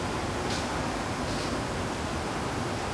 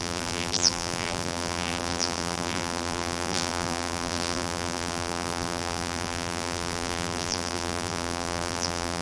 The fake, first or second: second